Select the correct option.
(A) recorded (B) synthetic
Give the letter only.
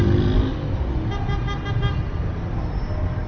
A